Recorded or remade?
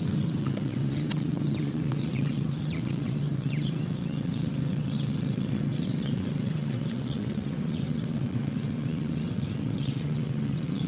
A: remade